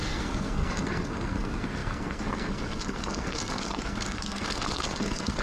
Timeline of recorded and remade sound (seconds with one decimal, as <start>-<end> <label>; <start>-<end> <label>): 0.0-5.4 remade

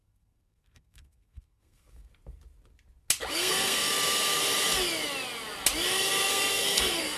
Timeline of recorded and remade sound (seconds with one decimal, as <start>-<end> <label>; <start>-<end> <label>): 0.0-2.1 remade; 2.1-3.3 recorded; 3.3-4.4 remade; 4.4-5.9 recorded; 5.9-7.2 remade

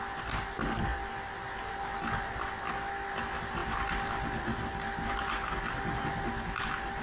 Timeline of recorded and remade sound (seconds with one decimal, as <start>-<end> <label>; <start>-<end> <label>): 0.0-7.0 recorded